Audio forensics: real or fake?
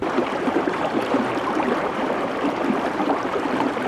fake